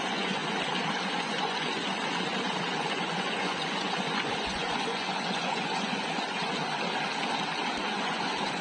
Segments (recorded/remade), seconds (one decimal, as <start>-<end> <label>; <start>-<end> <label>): 0.0-0.4 remade; 0.4-1.1 recorded; 1.1-1.8 remade; 1.8-2.7 recorded; 2.7-6.6 remade; 6.6-7.8 recorded; 7.8-8.6 remade